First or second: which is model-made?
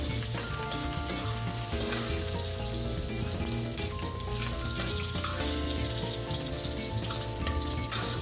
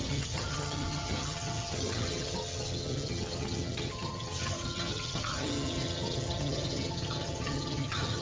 second